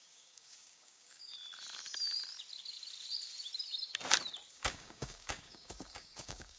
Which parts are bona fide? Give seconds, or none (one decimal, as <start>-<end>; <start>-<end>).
1.4-4.5